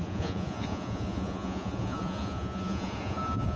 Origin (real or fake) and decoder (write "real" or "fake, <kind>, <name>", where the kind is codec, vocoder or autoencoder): fake, vocoder, Vocos